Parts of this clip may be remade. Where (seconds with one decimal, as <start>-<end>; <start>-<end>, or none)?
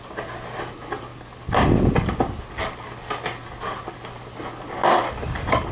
none